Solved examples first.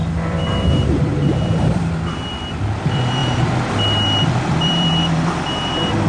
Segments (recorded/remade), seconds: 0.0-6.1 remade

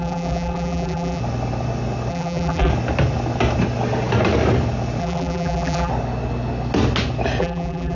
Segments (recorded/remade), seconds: 0.0-1.2 remade; 1.2-2.1 recorded; 2.1-2.7 remade; 2.7-5.0 recorded; 5.0-5.9 remade; 5.9-7.4 recorded; 7.4-8.0 remade

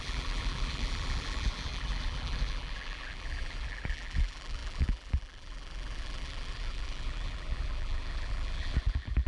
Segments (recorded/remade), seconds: 0.0-9.3 remade

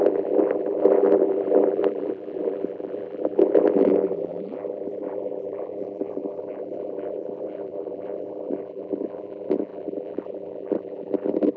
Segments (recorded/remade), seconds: 0.0-11.6 remade

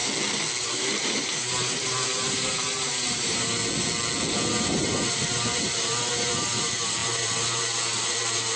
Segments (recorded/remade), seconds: 0.0-0.6 recorded; 0.6-3.6 remade; 3.6-4.5 recorded; 4.5-8.6 remade

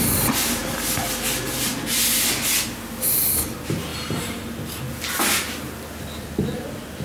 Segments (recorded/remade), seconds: 0.0-3.9 recorded; 3.9-4.9 remade; 4.9-7.0 recorded

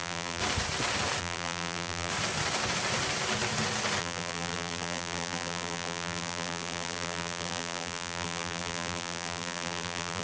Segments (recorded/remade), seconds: 0.0-0.4 remade; 0.4-1.2 recorded; 1.2-2.1 remade; 2.1-4.0 recorded; 4.0-10.2 remade